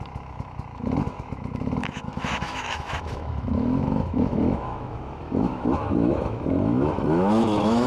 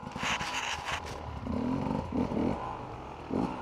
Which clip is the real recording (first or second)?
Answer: second